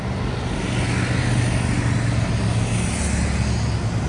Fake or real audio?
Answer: real